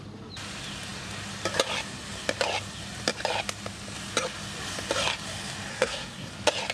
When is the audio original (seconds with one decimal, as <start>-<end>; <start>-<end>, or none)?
0.0-5.7; 6.3-6.7